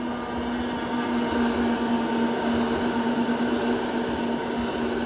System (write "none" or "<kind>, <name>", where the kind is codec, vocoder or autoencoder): none